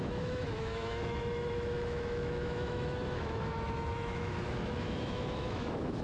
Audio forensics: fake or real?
fake